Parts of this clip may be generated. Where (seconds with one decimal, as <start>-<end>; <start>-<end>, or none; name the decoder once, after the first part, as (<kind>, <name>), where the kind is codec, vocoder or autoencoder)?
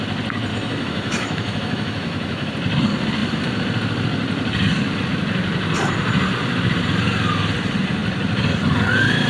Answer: 0.5-2.5 (autoencoder, DAC-VAE)